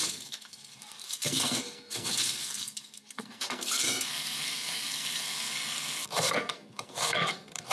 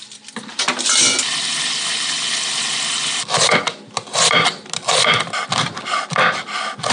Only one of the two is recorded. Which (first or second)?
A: second